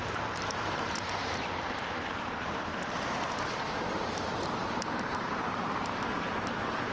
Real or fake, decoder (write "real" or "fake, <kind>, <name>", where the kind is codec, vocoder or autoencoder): fake, vocoder, BigVGAN v2